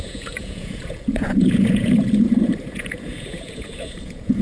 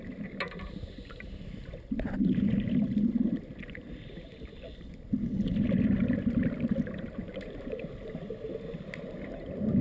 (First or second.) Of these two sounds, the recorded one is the second